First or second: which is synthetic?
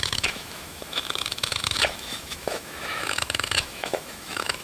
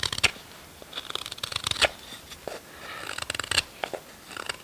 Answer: first